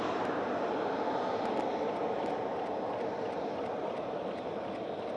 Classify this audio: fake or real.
real